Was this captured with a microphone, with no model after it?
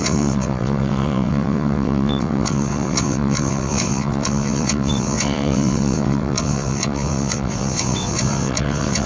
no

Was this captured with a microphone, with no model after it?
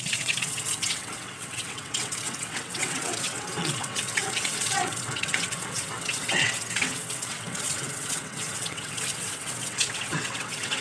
no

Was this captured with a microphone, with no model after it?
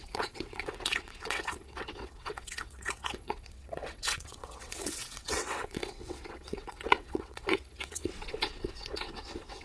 no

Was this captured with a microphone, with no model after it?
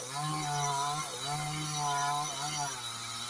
yes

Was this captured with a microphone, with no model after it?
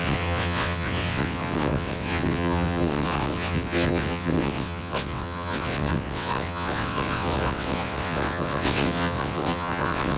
no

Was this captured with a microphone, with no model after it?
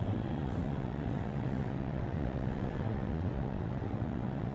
no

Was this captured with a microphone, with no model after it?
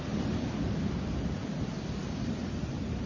yes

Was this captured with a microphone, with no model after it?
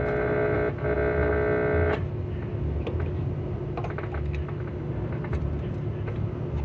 yes